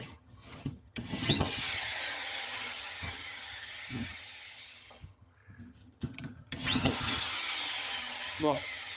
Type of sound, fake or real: fake